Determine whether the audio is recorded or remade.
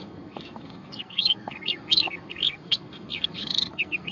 remade